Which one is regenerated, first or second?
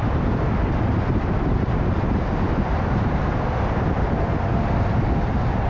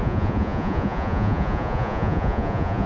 second